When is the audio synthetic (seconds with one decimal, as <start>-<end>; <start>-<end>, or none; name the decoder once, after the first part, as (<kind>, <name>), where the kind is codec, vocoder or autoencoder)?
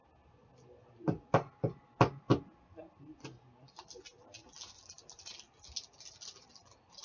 none